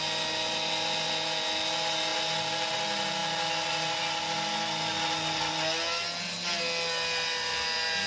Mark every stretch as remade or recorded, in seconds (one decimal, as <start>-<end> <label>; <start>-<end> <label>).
0.0-8.1 recorded